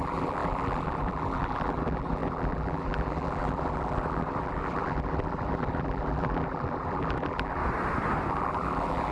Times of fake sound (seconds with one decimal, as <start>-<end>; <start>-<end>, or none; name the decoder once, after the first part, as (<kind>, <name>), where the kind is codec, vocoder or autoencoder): 0.0-7.6 (vocoder, BigVGAN v2); 8.3-9.1